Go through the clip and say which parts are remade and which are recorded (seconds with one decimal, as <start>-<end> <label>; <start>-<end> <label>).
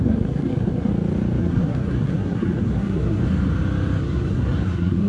0.0-0.9 remade; 0.9-1.4 recorded; 1.4-3.2 remade; 3.2-4.0 recorded; 4.0-5.1 remade